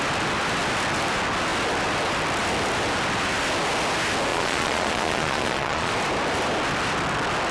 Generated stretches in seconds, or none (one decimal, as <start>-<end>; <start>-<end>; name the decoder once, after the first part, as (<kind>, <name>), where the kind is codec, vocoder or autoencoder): 4.3-5.9 (vocoder, Vocos)